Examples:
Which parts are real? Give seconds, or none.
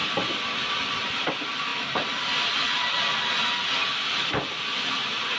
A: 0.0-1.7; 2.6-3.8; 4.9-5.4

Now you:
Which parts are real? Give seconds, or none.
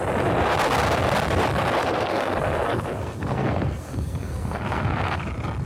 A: 0.0-1.8; 5.2-5.7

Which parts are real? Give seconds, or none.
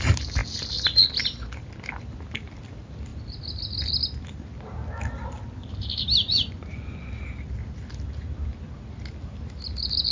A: 0.0-6.2; 7.1-10.1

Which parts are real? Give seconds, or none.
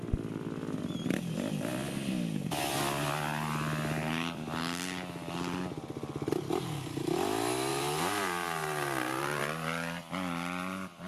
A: 0.0-7.7; 9.4-11.1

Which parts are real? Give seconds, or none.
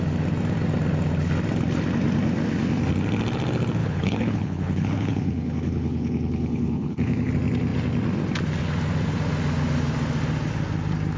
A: 0.0-3.8; 7.3-11.2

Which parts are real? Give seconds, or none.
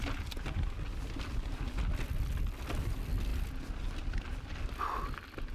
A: 0.0-5.5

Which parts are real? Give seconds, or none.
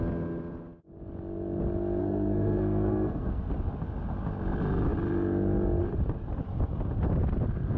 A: 0.0-2.0; 3.5-7.8